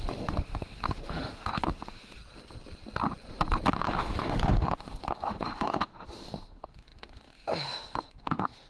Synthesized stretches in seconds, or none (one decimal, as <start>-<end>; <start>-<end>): 0.0-2.2; 3.7-8.7